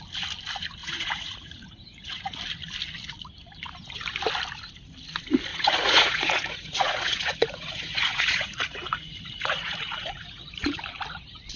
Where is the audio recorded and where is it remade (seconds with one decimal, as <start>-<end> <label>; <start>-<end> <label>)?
0.0-0.8 recorded; 0.8-2.4 remade; 2.4-5.5 recorded; 5.5-10.8 remade; 10.8-11.6 recorded